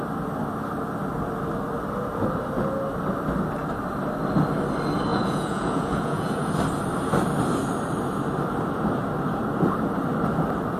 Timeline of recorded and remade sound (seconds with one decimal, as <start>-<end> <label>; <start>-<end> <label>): 0.0-5.1 recorded; 5.1-6.5 remade; 6.5-10.8 recorded